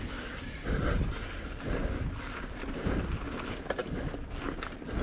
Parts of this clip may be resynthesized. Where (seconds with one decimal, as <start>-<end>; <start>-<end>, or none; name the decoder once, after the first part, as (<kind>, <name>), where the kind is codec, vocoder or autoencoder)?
none